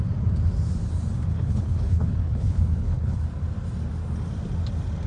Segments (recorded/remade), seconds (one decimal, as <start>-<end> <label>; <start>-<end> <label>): 0.0-1.3 recorded; 1.3-3.2 remade; 3.2-5.1 recorded